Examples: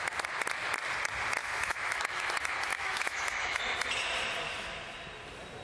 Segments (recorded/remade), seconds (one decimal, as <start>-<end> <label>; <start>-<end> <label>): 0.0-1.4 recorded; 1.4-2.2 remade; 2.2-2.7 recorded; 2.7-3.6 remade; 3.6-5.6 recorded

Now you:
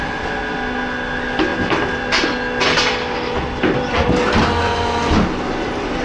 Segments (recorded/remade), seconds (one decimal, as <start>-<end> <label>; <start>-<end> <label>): 0.0-6.0 recorded

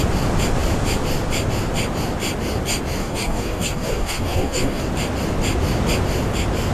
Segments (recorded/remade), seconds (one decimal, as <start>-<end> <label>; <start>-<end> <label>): 0.0-3.0 recorded; 3.0-4.8 remade; 4.8-6.7 recorded

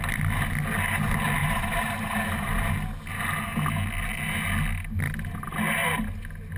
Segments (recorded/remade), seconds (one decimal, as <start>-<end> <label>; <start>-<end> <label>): 0.0-1.4 recorded; 1.4-2.7 remade; 2.7-6.6 recorded

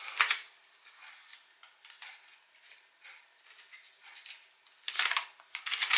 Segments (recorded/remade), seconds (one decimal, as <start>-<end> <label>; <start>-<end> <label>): 0.0-6.0 recorded

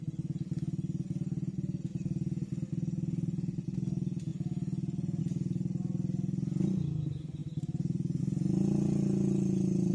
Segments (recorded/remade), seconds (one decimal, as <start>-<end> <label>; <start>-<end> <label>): 0.0-7.4 recorded; 7.4-8.2 remade; 8.2-9.9 recorded